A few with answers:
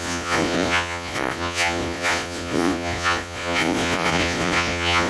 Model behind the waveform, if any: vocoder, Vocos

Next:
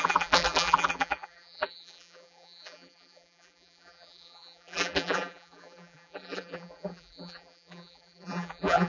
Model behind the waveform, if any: vocoder, BigVGAN v2